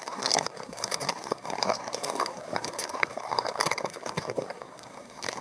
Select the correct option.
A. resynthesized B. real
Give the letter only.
A